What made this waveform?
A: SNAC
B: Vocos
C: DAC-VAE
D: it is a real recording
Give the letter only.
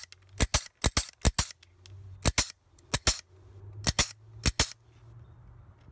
D